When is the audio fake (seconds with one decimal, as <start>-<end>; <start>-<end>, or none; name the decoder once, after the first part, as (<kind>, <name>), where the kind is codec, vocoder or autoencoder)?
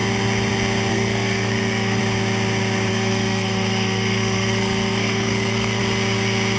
0.9-2.0 (codec, SNAC); 2.9-5.8